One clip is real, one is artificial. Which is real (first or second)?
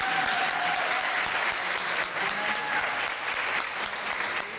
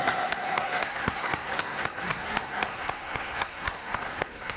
first